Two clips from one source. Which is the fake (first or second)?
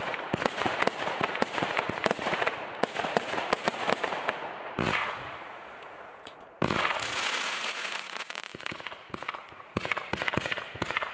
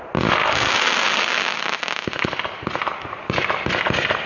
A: first